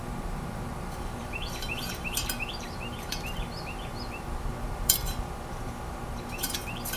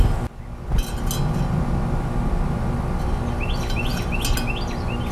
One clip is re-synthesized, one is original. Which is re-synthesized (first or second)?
first